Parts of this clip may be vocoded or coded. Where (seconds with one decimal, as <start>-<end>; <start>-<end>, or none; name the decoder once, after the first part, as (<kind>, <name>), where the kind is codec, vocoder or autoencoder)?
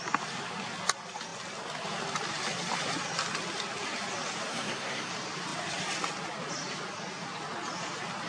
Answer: 4.5-5.1 (codec, SNAC)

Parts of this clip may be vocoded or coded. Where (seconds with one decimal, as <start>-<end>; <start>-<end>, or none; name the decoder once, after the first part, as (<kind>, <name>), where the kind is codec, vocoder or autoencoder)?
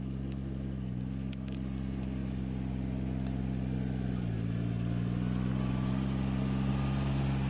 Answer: none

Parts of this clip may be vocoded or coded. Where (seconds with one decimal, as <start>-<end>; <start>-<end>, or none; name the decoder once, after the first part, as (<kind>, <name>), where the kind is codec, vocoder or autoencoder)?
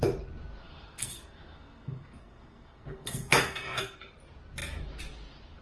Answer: 0.6-4.0 (codec, SNAC)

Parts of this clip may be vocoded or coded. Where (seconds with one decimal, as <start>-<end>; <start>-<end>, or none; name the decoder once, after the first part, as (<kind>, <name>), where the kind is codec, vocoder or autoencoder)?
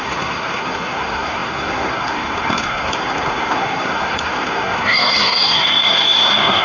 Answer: 0.0-6.6 (codec, SNAC)